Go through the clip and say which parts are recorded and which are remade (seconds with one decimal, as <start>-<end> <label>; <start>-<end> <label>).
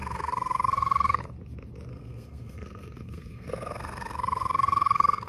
0.0-1.2 remade; 1.2-1.9 recorded; 1.9-5.3 remade